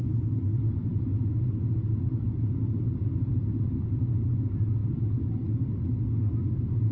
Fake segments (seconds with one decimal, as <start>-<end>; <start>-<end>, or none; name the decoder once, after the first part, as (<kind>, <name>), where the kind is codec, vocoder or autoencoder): none